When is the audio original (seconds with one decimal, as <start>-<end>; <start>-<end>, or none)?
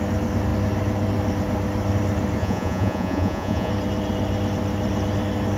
0.0-2.4; 3.7-5.6